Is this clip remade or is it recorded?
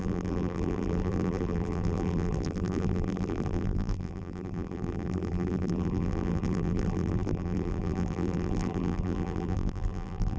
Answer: remade